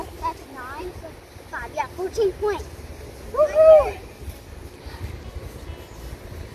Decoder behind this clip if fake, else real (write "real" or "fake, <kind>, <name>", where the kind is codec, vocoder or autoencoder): real